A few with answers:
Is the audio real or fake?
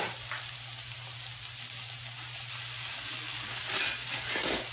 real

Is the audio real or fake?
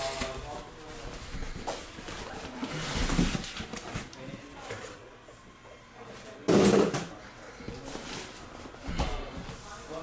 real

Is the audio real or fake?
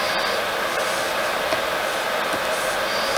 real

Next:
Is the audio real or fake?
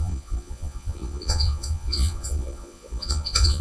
fake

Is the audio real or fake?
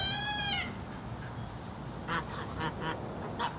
real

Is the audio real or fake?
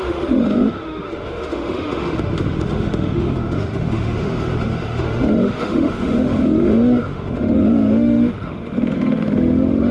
fake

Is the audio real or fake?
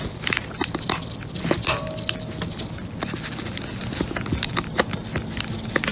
real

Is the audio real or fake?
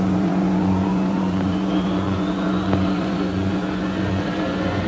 fake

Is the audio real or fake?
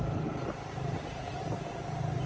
real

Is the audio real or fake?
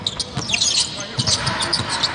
real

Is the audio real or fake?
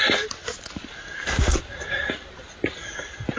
real